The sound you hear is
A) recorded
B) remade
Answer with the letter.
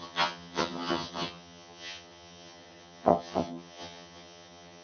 B